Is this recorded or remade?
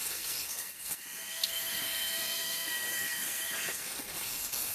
remade